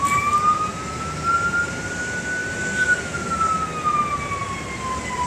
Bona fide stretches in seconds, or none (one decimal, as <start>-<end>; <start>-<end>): 0.0-5.3